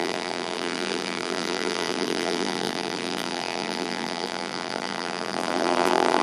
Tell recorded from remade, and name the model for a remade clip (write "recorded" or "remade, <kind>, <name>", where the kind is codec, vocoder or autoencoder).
remade, vocoder, BigVGAN v2